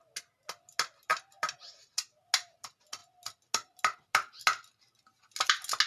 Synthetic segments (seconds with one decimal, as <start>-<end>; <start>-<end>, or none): none